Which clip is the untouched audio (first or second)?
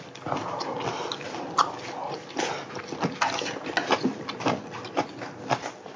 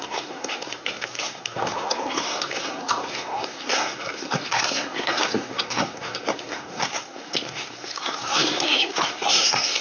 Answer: first